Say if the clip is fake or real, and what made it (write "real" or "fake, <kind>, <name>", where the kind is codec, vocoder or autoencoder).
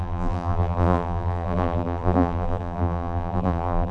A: fake, vocoder, BigVGAN v2